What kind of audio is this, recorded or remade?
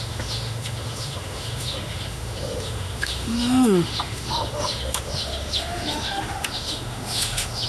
remade